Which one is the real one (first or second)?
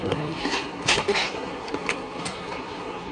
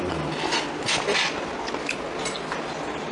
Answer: second